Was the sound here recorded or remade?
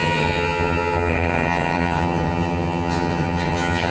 remade